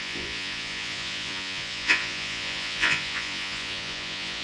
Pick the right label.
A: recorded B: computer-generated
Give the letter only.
B